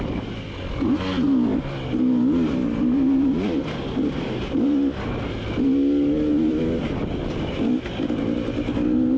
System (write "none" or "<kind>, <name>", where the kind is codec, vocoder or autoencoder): none